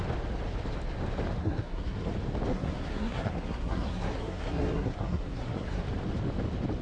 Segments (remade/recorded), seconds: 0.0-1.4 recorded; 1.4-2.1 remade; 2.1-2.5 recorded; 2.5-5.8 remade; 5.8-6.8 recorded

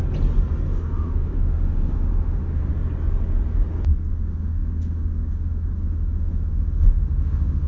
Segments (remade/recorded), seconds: 0.0-0.7 recorded; 0.7-2.7 remade; 2.7-4.1 recorded; 4.1-7.7 remade